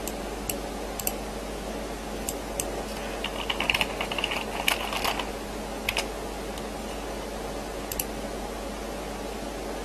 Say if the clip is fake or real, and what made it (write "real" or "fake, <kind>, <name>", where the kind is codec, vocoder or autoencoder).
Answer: real